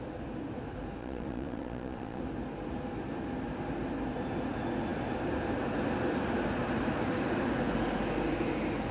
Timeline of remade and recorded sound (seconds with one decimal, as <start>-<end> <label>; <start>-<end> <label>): 0.0-1.0 recorded; 1.0-2.2 remade; 2.2-8.9 recorded